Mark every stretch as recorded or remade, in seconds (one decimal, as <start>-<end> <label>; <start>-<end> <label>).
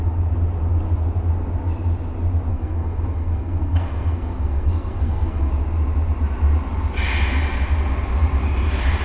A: 0.0-2.5 recorded; 2.5-5.5 remade; 5.5-9.0 recorded